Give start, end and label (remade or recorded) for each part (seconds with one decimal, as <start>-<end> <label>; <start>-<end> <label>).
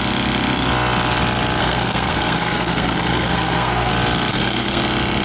0.0-1.6 recorded; 1.6-3.9 remade; 3.9-4.3 recorded; 4.3-4.8 remade; 4.8-5.2 recorded